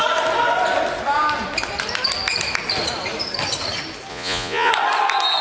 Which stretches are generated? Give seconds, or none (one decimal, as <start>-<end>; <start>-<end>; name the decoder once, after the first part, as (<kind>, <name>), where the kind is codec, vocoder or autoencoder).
4.1-4.7 (vocoder, Vocos)